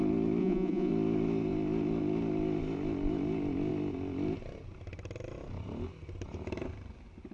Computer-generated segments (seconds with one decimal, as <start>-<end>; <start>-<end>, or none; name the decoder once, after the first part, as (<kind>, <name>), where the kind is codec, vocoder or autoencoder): 0.4-0.9 (vocoder, Vocos)